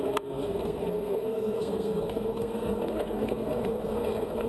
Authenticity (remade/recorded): remade